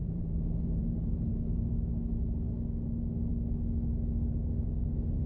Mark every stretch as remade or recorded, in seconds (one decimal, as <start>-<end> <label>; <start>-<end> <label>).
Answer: 0.0-1.4 remade; 1.4-5.3 recorded